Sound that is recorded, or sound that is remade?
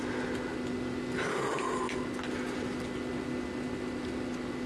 recorded